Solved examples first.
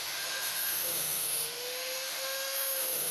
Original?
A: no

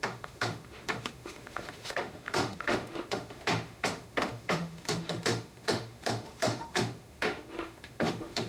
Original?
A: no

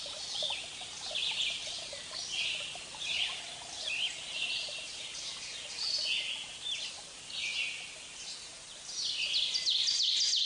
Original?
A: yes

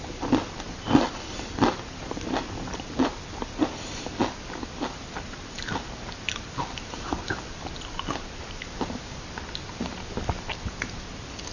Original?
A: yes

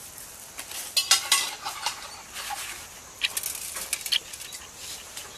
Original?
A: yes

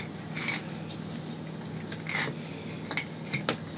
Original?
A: yes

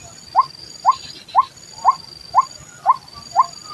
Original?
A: yes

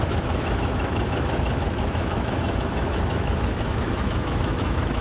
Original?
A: no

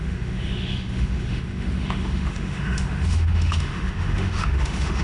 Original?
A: no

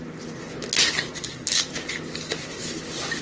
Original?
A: yes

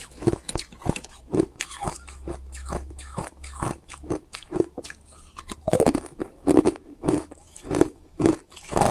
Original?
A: no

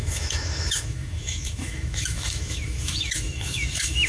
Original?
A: no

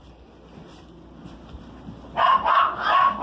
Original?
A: yes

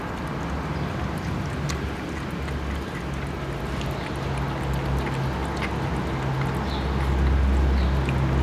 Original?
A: yes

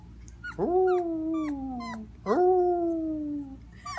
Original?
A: yes